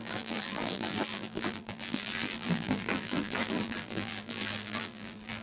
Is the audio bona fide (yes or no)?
no